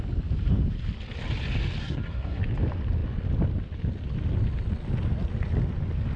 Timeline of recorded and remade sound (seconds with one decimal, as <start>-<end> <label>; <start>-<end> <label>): 0.0-1.8 recorded; 1.8-2.4 remade; 2.4-6.2 recorded